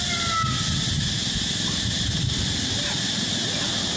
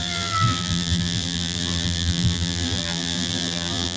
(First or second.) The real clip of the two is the first